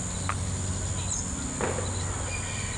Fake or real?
real